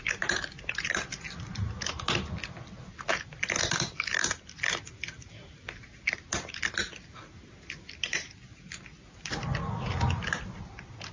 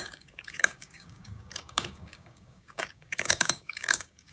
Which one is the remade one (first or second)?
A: second